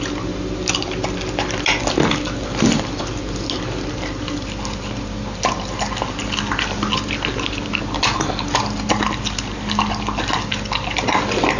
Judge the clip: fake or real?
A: real